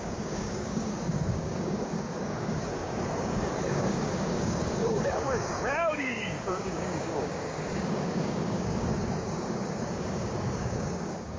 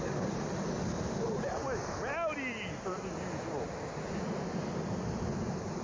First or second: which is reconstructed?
first